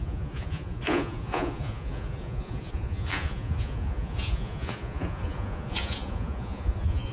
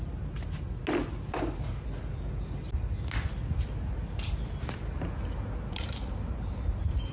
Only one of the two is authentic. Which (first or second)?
second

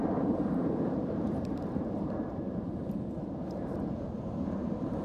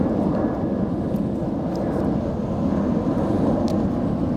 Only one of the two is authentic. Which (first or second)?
second